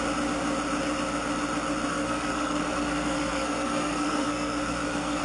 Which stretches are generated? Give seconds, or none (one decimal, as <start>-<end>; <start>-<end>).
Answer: 1.9-5.2